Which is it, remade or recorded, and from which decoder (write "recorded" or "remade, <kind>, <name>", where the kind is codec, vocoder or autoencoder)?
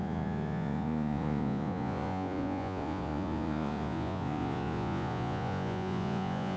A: remade, vocoder, Vocos